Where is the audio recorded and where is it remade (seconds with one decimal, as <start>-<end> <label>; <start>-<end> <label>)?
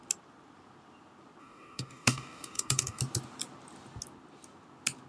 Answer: 0.0-1.4 recorded; 1.4-3.0 remade; 3.0-5.1 recorded